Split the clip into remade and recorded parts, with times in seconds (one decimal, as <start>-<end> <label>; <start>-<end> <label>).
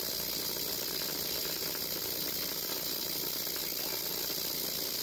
0.0-1.4 recorded; 1.4-3.6 remade; 3.6-5.0 recorded